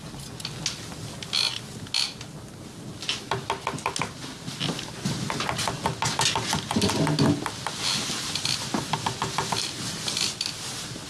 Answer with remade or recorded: recorded